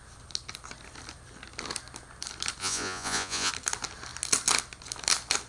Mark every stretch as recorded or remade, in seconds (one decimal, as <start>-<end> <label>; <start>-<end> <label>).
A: 0.0-2.6 recorded; 2.6-3.5 remade; 3.5-5.5 recorded